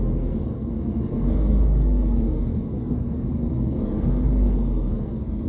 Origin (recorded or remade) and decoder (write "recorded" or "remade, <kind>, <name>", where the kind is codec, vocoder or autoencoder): remade, codec, SNAC